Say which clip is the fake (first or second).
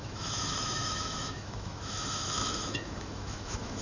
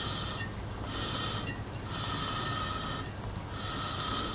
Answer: first